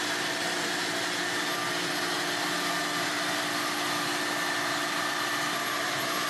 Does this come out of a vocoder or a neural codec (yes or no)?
no